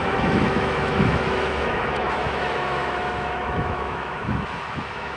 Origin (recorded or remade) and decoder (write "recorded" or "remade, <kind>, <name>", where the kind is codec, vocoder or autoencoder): remade, autoencoder, DAC-VAE